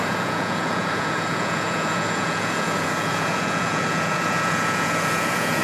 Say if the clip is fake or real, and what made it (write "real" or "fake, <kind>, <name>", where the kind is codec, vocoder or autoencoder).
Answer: fake, vocoder, Vocos